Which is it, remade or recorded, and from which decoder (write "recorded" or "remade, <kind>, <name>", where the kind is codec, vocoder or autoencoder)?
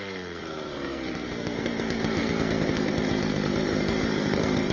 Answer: remade, codec, SNAC